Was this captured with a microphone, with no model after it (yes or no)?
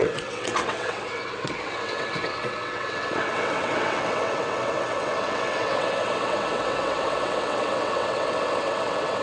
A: no